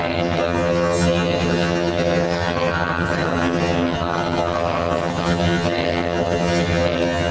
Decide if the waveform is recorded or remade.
remade